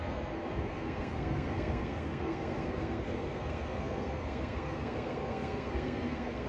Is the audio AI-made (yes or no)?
yes